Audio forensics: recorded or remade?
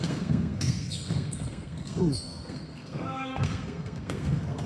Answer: remade